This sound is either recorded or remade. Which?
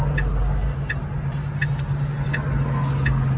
recorded